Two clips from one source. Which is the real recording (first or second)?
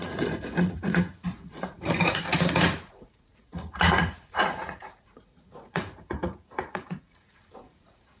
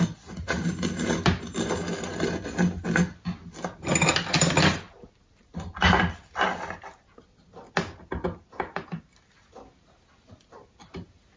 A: second